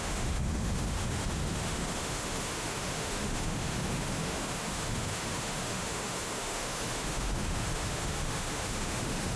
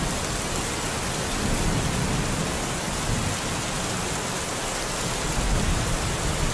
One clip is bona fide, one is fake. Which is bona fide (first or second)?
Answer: second